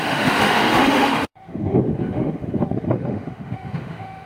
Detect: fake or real fake